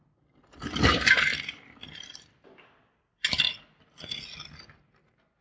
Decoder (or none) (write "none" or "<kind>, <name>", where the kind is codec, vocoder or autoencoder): none